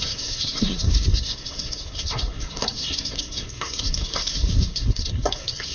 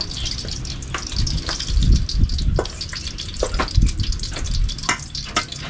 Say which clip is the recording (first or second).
second